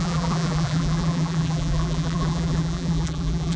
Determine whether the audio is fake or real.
fake